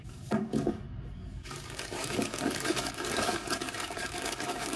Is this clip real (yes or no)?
no